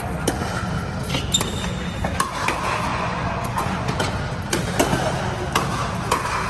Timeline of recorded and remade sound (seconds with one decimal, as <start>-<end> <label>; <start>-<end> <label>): 0.0-2.9 recorded; 2.9-4.1 remade; 4.1-6.5 recorded